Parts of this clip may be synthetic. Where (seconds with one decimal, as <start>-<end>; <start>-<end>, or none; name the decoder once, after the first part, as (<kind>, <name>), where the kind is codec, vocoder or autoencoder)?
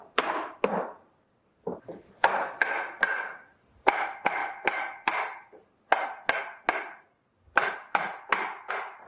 0.0-4.4 (vocoder, BigVGAN v2); 8.7-9.1